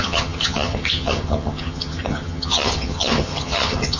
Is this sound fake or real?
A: fake